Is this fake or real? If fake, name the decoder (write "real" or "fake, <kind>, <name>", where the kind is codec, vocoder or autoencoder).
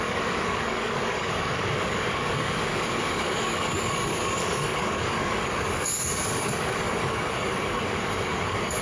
fake, codec, DAC